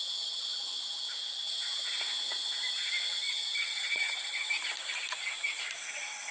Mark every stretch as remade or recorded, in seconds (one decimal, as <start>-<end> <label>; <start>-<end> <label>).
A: 0.0-3.2 recorded; 3.2-4.5 remade; 4.5-6.3 recorded